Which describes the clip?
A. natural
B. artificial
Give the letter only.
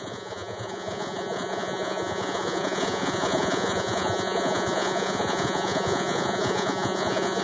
B